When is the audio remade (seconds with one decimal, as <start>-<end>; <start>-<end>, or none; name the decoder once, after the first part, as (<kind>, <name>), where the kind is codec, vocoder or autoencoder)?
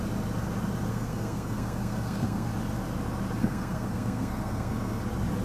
0.9-2.5 (codec, SNAC); 3.4-5.0